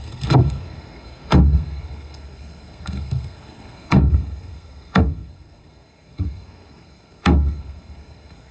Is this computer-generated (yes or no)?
yes